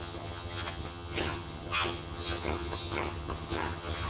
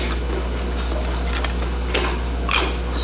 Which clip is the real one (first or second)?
second